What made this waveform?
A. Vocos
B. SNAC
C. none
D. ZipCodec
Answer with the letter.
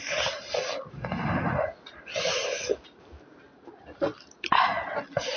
C